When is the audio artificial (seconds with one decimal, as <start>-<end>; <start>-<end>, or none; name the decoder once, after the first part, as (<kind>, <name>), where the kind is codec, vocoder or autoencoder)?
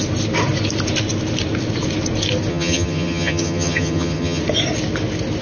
2.5-4.4 (vocoder, HiFi-GAN)